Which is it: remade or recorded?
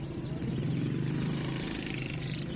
remade